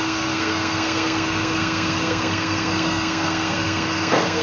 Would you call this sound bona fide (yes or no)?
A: no